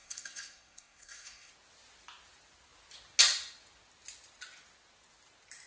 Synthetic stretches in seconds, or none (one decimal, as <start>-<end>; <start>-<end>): 0.0-1.5